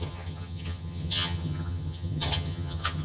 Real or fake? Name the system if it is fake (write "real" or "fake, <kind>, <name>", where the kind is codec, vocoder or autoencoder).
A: fake, vocoder, HiFi-GAN